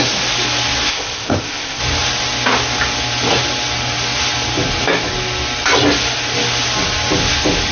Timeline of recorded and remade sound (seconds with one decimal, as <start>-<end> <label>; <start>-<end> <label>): 0.0-0.9 recorded; 0.9-1.8 remade; 1.8-7.7 recorded